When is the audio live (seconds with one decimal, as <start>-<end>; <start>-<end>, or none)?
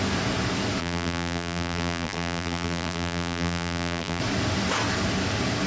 0.0-0.8; 4.2-5.7